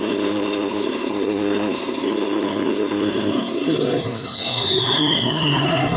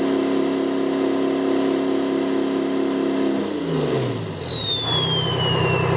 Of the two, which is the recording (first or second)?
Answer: second